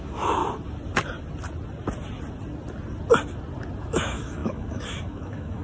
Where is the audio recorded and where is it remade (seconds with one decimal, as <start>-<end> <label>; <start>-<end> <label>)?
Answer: 0.0-0.4 remade; 0.4-3.8 recorded; 3.8-5.6 remade